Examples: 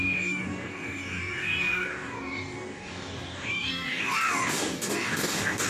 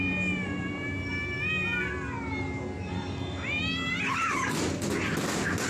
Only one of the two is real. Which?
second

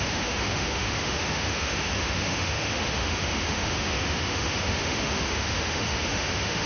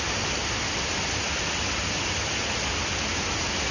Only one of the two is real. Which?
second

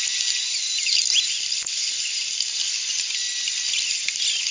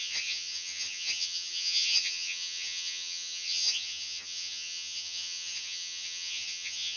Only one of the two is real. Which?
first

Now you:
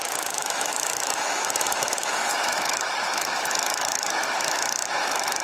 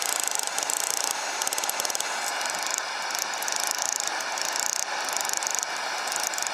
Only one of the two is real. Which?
second